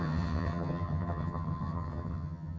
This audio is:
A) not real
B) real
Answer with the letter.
A